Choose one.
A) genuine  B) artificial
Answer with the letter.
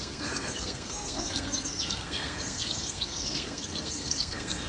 B